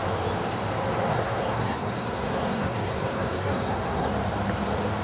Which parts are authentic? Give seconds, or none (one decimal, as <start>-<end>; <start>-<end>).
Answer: 0.0-1.1; 4.1-5.0